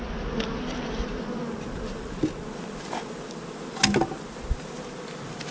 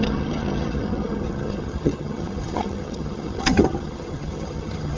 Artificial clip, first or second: second